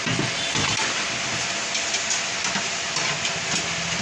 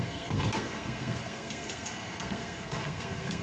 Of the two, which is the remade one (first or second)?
second